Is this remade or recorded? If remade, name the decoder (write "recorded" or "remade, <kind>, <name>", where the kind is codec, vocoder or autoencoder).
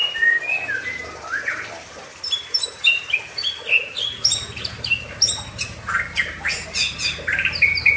recorded